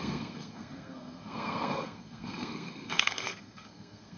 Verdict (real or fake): fake